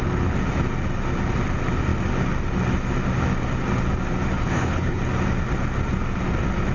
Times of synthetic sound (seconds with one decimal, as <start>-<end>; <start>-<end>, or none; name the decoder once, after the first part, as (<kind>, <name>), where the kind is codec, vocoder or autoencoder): 4.4-5.0 (codec, HILCodec)